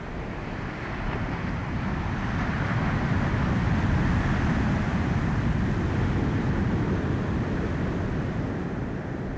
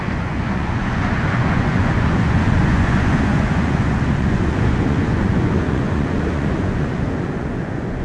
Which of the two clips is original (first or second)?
first